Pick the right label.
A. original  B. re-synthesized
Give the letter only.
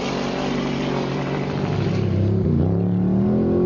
A